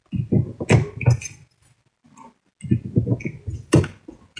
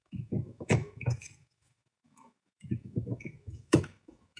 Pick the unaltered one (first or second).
first